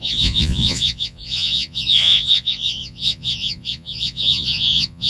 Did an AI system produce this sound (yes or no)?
yes